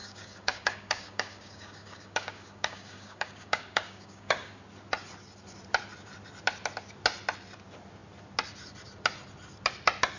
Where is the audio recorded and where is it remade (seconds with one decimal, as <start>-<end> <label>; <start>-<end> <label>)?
0.0-4.6 remade; 4.6-10.2 recorded